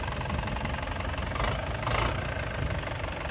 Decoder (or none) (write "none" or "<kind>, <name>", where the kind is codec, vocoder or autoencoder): none